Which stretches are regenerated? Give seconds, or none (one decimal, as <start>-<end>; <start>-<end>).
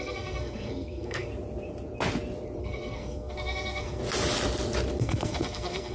0.0-1.3; 2.6-4.0; 5.0-5.9